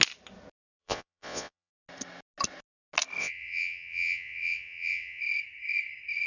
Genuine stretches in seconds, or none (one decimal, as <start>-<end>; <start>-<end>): 0.0-0.8; 1.7-3.2; 5.2-6.3